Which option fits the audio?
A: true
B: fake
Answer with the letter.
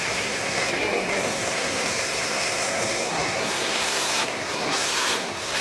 B